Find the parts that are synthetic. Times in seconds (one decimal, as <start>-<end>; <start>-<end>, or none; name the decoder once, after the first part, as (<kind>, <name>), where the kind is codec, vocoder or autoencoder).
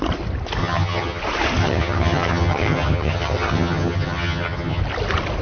0.6-1.2 (vocoder, HiFi-GAN); 1.6-4.8